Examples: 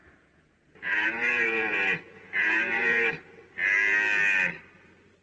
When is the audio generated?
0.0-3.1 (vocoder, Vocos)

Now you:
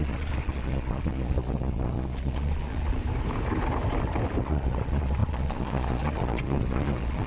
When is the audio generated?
0.0-3.0 (vocoder, Vocos); 4.4-7.3

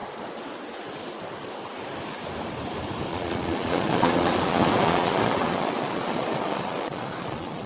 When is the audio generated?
3.1-7.7 (vocoder, Vocos)

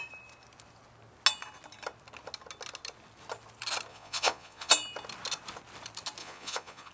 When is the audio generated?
3.9-4.7 (vocoder, Vocos); 6.2-6.9

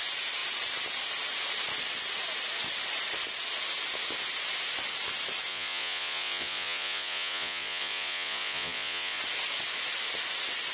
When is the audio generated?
5.5-9.2 (vocoder, Vocos)

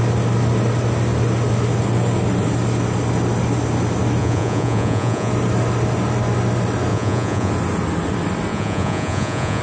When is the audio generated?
4.2-5.3 (vocoder, Vocos); 6.9-7.5; 8.5-9.6

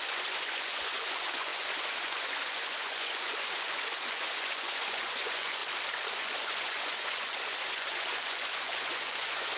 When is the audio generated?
0.0-5.6 (vocoder, Vocos); 6.1-9.6

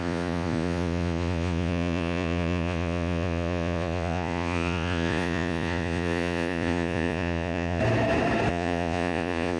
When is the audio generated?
0.0-7.8 (vocoder, Vocos); 8.5-9.6